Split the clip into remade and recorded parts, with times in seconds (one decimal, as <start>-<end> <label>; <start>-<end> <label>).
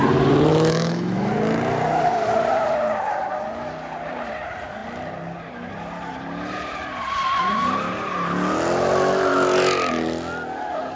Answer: 0.0-0.5 recorded; 0.5-1.3 remade; 1.3-11.0 recorded